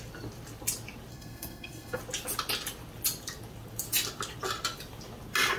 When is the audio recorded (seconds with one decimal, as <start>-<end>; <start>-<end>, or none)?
0.0-1.1; 2.0-5.6